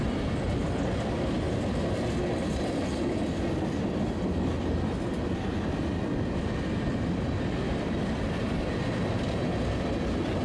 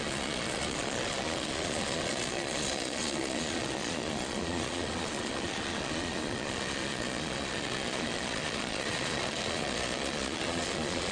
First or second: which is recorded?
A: first